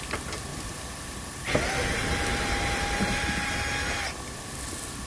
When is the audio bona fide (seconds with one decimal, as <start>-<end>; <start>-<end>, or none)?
0.0-0.5; 3.6-5.1